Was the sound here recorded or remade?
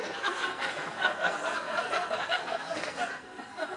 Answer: remade